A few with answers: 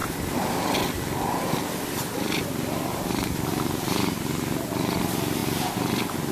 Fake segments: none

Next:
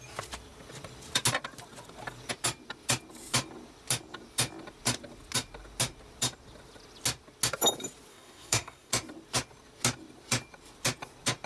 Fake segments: 8.1-8.9 (codec, SNAC)

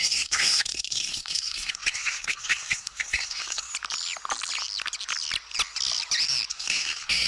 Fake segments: 0.0-3.7 (codec, SNAC); 6.5-7.3

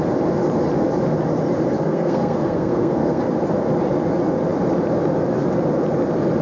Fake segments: 1.8-3.2 (codec, SNAC)

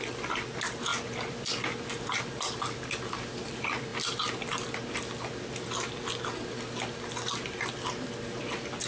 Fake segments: none

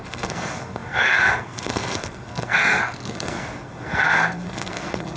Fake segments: 0.0-5.2 (codec, SNAC)

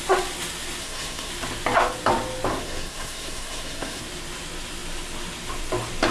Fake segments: 0.8-1.3 (codec, SNAC); 2.5-4.0